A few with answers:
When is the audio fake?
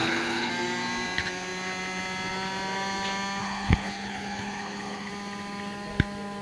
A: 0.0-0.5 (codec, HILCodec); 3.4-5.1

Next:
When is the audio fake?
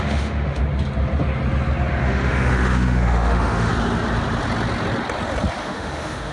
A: 0.0-0.6 (autoencoder, DAC-VAE); 2.0-3.7; 5.6-6.3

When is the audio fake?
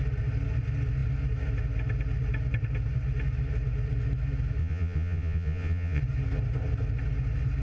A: 4.6-6.0 (vocoder, Vocos)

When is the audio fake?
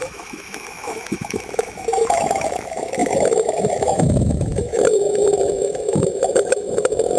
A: 0.0-7.2 (autoencoder, DAC-VAE)